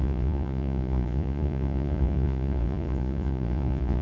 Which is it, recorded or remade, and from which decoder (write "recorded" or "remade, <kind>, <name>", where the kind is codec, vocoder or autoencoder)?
remade, vocoder, Vocos